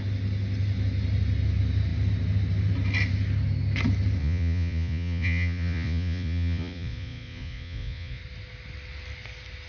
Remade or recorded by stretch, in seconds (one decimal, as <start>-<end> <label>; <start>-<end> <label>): 0.0-4.2 recorded; 4.2-8.2 remade; 8.2-9.7 recorded

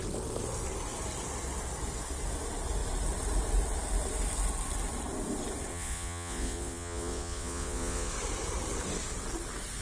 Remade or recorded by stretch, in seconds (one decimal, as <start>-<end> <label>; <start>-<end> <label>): 0.0-5.7 recorded; 5.7-8.1 remade; 8.1-9.8 recorded

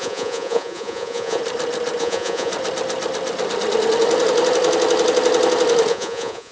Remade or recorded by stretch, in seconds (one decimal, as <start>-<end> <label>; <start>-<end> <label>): 0.0-1.4 remade; 1.4-2.0 recorded; 2.0-2.5 remade; 2.5-5.9 recorded; 5.9-6.5 remade

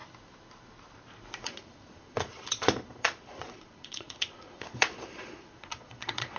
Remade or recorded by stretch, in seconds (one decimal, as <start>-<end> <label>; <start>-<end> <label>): 0.0-1.4 recorded; 1.4-6.4 remade

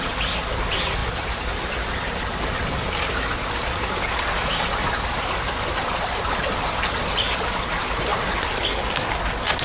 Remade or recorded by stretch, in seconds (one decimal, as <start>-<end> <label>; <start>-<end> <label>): 0.0-9.6 recorded